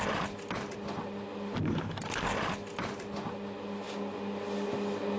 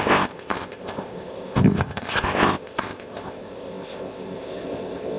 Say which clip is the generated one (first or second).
second